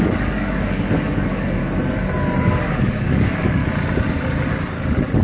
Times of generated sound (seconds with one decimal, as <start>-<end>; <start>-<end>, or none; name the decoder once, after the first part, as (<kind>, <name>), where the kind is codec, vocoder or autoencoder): 0.0-1.6 (codec, DAC); 2.4-3.6